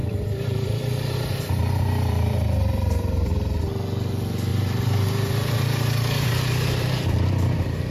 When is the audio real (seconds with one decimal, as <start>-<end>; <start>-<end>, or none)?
3.6-4.5; 7.0-7.9